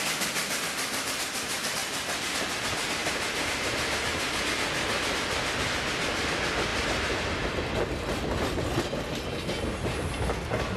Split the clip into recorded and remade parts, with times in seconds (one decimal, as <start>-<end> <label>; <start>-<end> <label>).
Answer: 0.0-3.0 recorded; 3.0-4.4 remade; 4.4-6.7 recorded; 6.7-7.3 remade; 7.3-10.8 recorded